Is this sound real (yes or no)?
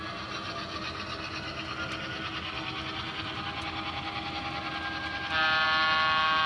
yes